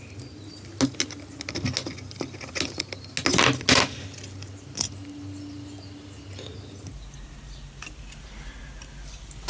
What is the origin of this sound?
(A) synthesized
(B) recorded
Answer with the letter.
B